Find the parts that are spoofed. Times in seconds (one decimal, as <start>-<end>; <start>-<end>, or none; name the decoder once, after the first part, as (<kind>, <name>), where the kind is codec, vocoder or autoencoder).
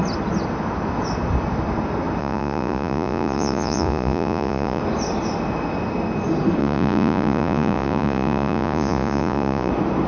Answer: 2.2-4.8 (vocoder, Vocos); 6.6-9.7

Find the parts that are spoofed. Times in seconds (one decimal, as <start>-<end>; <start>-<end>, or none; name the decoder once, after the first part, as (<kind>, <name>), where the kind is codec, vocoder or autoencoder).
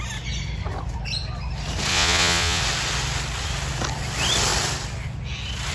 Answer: 1.9-2.6 (vocoder, Vocos)